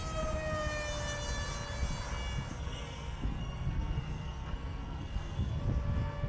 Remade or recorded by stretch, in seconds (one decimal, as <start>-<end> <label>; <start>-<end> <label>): 0.0-2.5 recorded; 2.5-5.6 remade; 5.6-6.3 recorded